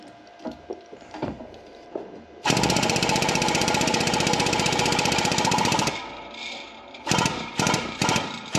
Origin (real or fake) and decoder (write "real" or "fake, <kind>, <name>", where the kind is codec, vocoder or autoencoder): fake, vocoder, BigVGAN v2